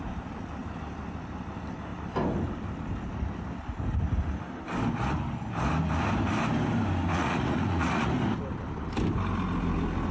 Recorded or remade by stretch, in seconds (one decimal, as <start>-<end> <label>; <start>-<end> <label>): 0.0-7.1 recorded; 7.1-8.1 remade; 8.1-10.1 recorded